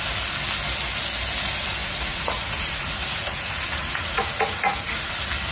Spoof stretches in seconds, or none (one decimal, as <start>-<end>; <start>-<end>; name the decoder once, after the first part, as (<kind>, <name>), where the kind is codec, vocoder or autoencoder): 1.8-5.1 (vocoder, Vocos)